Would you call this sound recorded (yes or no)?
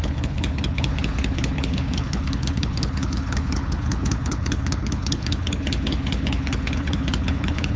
no